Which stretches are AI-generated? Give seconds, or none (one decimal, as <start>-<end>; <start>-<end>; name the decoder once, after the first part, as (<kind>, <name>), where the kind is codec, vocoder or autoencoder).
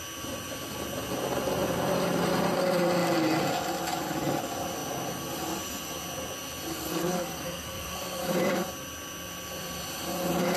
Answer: 6.7-8.3 (codec, SNAC)